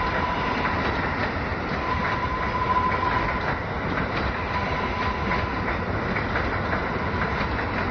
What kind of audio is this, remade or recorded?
recorded